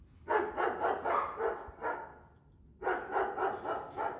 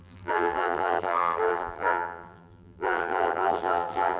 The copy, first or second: second